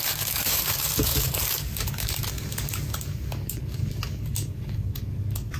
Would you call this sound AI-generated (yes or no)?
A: yes